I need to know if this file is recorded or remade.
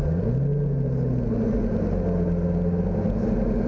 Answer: recorded